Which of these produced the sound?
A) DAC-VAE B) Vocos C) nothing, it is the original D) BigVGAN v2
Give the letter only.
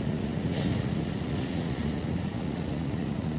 B